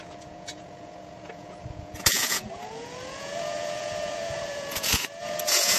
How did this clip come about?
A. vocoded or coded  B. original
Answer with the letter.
A